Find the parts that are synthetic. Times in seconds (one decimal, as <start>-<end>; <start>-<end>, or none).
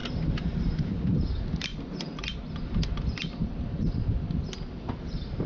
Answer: none